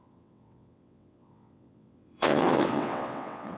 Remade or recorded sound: remade